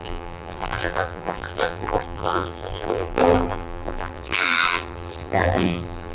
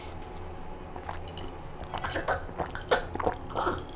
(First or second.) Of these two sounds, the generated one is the first